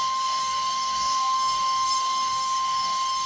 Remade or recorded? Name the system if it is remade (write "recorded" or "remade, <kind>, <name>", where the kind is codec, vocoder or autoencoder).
remade, codec, DAC